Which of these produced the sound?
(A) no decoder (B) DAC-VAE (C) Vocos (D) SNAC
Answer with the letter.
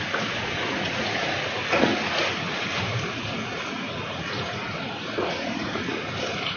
C